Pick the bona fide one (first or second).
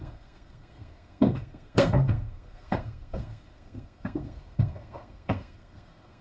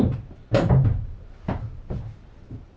second